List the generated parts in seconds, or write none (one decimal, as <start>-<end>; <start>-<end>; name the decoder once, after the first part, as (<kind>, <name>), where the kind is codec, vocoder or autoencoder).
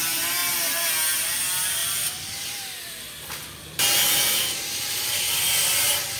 1.8-3.8 (vocoder, BigVGAN v2)